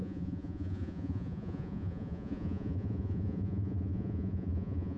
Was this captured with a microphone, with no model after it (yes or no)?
no